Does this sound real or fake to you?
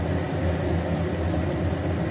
real